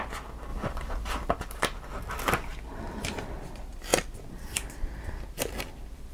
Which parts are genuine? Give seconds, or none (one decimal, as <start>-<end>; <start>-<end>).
none